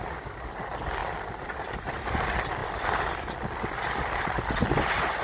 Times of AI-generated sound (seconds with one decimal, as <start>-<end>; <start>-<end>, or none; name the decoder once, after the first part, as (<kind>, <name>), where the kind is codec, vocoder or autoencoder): none